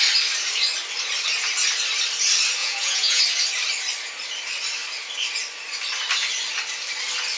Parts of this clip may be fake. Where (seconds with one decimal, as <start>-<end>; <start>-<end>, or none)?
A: 2.6-3.2